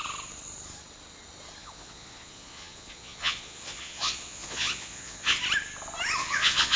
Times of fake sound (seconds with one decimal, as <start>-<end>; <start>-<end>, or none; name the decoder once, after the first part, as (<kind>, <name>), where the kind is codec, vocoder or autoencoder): 1.6-5.4 (vocoder, Vocos); 6.2-6.8